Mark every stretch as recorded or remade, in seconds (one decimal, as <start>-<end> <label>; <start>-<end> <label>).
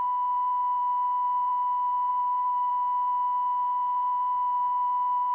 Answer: 0.0-2.1 recorded; 2.1-2.7 remade; 2.7-5.3 recorded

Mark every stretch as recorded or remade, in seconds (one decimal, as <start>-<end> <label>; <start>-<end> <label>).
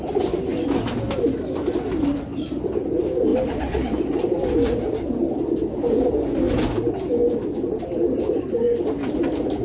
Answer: 0.0-9.6 recorded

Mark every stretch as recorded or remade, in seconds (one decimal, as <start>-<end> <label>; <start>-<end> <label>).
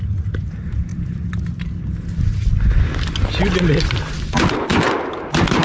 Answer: 0.0-5.6 recorded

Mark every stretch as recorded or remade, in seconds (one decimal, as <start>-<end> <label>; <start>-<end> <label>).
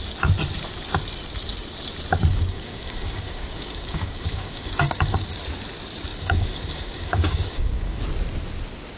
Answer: 0.0-2.3 recorded; 2.3-5.4 remade; 5.4-6.1 recorded; 6.1-8.0 remade; 8.0-9.0 recorded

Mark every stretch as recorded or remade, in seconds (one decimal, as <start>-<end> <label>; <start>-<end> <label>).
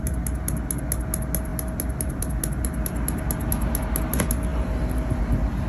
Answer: 0.0-5.7 recorded